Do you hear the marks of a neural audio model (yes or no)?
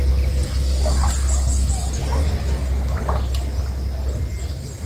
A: no